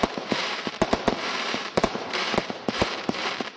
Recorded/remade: remade